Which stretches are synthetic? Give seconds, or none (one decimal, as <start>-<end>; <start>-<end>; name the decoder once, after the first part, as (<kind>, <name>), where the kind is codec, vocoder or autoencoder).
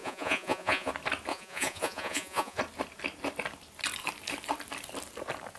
0.0-0.9 (vocoder, Vocos); 1.3-2.6